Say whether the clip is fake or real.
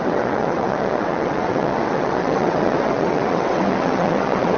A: fake